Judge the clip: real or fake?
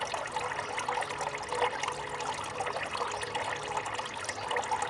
real